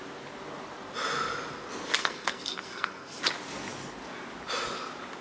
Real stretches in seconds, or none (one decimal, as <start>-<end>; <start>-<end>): 0.0-2.0; 3.2-5.2